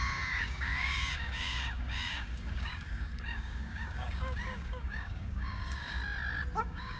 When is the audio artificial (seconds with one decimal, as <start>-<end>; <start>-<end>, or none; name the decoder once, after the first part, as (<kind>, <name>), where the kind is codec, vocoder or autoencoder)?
0.0-6.0 (codec, DAC); 6.6-7.0